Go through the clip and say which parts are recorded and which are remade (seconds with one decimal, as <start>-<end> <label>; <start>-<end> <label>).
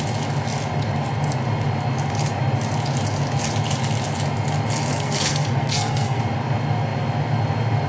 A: 0.0-4.9 recorded; 4.9-6.2 remade; 6.2-7.9 recorded